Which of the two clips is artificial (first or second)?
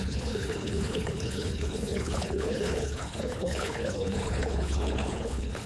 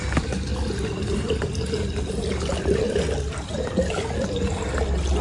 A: first